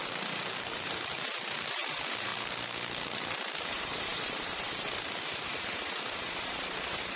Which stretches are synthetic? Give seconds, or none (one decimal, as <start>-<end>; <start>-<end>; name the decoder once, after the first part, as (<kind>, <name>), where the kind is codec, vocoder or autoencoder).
0.0-2.3 (vocoder, BigVGAN v2); 3.3-7.2